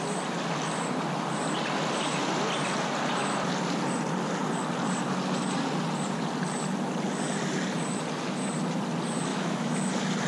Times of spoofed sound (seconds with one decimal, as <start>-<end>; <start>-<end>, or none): 9.3-9.9